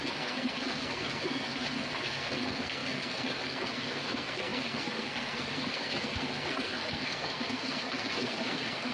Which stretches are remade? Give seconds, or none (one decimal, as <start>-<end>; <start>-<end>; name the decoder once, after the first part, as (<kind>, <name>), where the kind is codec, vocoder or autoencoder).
0.0-8.9 (codec, SNAC)